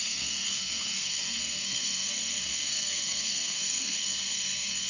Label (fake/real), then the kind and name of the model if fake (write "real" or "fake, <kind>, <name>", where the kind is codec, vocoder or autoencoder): fake, codec, SNAC